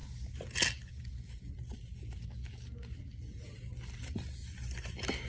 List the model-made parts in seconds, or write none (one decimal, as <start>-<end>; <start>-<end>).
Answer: none